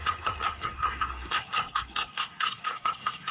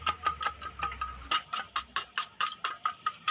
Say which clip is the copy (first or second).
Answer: first